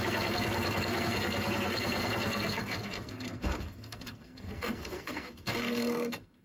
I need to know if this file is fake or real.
fake